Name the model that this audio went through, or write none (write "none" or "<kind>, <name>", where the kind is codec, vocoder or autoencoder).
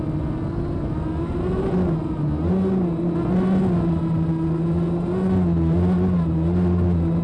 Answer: none